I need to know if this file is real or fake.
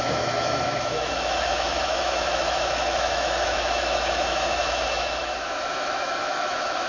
fake